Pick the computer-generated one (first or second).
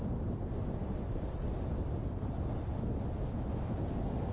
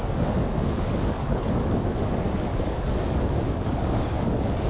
second